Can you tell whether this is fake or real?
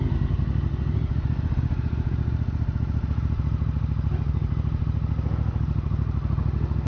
real